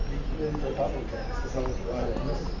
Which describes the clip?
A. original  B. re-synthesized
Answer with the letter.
A